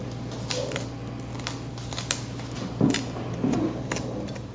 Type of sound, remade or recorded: recorded